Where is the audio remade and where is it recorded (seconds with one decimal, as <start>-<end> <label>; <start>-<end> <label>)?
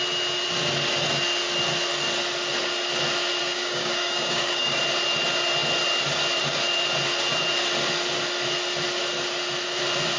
0.0-3.4 recorded; 3.4-4.8 remade; 4.8-10.2 recorded